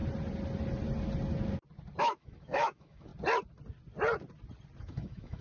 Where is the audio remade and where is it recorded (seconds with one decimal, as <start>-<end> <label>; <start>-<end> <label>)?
0.0-2.0 recorded; 2.0-3.1 remade; 3.1-4.8 recorded; 4.8-5.4 remade